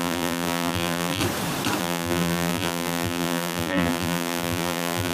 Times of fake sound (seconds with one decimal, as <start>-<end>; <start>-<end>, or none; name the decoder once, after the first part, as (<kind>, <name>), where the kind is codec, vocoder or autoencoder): 0.0-1.2 (vocoder, BigVGAN v2); 1.8-5.1

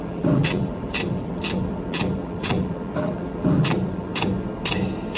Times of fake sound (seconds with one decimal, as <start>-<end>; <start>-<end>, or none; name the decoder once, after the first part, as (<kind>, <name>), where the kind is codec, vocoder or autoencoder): 0.0-4.1 (vocoder, BigVGAN v2)

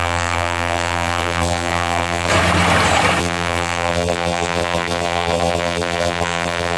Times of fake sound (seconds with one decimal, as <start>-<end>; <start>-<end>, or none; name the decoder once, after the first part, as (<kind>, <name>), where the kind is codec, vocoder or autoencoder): 0.0-2.3 (vocoder, BigVGAN v2); 3.2-6.8

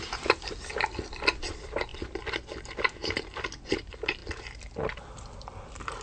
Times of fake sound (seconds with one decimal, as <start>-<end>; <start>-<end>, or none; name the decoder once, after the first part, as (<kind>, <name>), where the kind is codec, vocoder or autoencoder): 0.0-3.0 (vocoder, BigVGAN v2); 3.8-4.2; 5.0-6.0

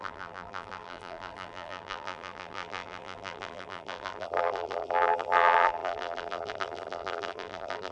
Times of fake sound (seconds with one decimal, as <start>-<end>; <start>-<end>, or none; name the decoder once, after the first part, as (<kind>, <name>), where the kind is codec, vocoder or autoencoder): 0.0-7.9 (vocoder, BigVGAN v2)